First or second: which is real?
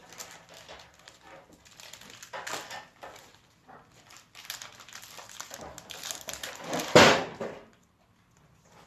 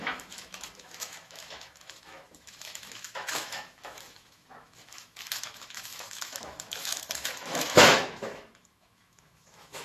first